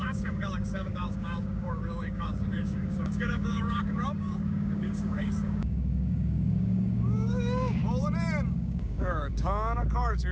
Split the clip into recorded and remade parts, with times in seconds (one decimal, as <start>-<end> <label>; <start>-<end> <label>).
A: 0.0-7.8 remade; 7.8-8.5 recorded; 8.5-10.3 remade